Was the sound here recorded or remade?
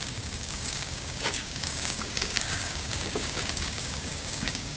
remade